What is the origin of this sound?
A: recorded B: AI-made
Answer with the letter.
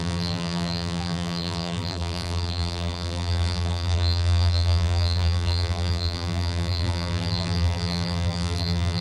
B